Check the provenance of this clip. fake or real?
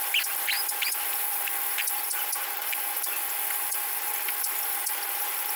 real